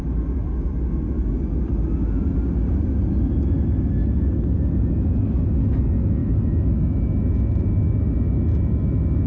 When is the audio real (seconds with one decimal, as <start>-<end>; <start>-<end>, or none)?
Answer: 0.0-6.2; 6.8-9.3